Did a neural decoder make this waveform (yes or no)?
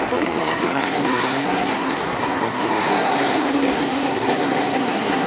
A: yes